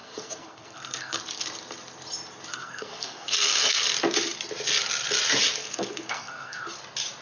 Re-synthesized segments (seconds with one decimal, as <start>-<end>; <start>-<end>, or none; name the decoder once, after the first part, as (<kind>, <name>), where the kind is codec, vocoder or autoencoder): 0.0-1.2 (codec, SNAC); 2.5-3.8; 5.6-6.6